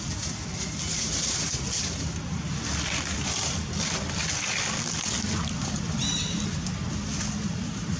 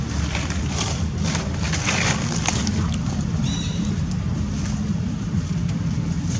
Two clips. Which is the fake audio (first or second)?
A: second